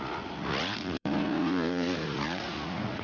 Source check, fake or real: fake